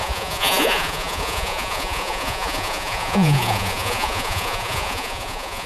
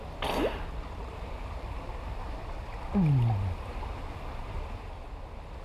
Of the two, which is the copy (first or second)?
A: first